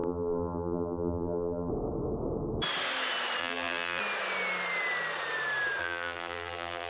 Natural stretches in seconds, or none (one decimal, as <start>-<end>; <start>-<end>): 1.7-3.4; 4.0-5.8